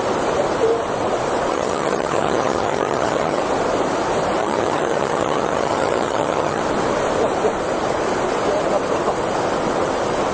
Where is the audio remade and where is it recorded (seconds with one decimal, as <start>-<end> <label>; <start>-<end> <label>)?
0.0-1.5 recorded; 1.5-3.4 remade; 3.4-4.4 recorded; 4.4-6.6 remade; 6.6-10.3 recorded